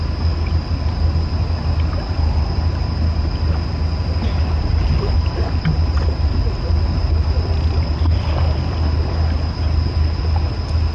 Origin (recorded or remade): recorded